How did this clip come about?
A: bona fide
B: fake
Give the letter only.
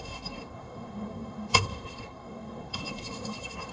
B